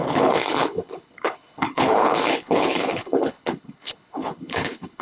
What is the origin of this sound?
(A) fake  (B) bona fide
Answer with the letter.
A